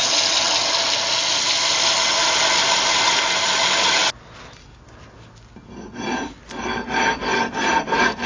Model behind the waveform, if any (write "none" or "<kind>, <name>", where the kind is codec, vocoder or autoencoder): none